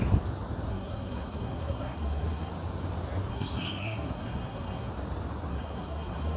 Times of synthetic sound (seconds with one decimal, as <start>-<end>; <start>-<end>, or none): 0.7-2.5; 3.3-4.9; 5.5-6.4